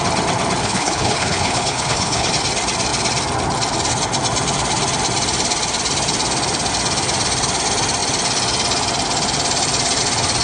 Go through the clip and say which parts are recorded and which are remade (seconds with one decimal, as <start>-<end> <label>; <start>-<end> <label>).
0.0-0.6 recorded; 0.6-2.3 remade; 2.3-10.4 recorded